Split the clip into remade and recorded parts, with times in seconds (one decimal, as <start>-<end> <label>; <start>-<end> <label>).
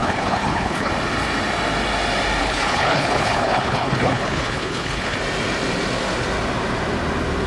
0.0-0.9 remade; 0.9-2.4 recorded; 2.4-5.2 remade; 5.2-7.5 recorded